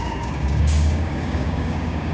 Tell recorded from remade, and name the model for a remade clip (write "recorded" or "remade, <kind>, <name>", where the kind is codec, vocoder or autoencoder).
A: remade, codec, DAC